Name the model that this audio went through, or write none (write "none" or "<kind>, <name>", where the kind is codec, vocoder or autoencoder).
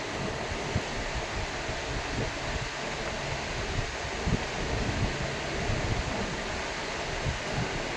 none